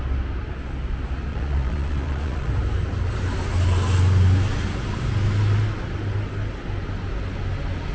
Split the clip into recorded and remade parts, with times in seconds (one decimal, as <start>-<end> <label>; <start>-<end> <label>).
0.0-1.3 recorded; 1.3-2.5 remade; 2.5-7.9 recorded